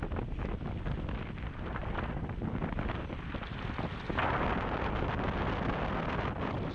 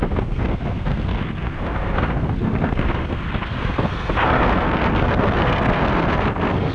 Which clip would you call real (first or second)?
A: first